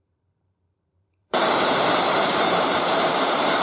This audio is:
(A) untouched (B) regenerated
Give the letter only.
B